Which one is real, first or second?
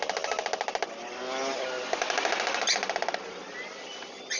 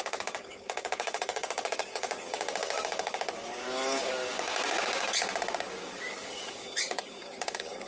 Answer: first